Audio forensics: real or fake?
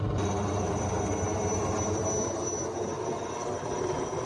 real